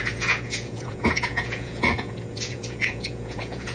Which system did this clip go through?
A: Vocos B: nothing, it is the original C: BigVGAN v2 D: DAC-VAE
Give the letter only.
A